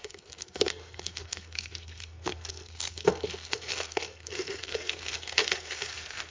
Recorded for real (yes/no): no